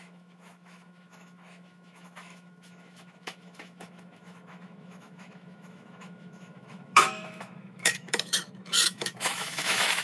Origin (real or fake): fake